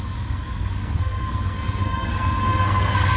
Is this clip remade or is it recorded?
remade